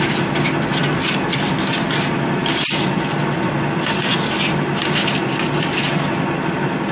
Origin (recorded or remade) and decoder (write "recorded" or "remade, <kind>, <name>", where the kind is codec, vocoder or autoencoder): recorded